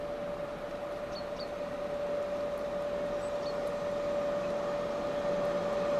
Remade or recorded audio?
recorded